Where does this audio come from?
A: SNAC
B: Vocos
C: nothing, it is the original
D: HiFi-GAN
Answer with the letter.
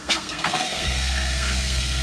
A